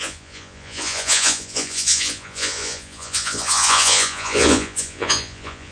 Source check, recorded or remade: remade